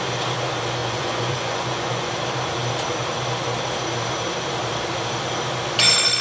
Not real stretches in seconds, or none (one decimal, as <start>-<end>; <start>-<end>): 0.8-2.1